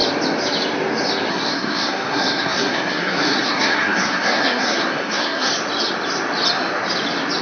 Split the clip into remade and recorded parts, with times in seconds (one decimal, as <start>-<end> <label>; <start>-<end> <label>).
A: 0.0-1.3 recorded; 1.3-5.5 remade; 5.5-7.4 recorded